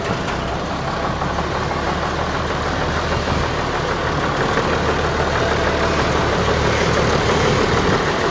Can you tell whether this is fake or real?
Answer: real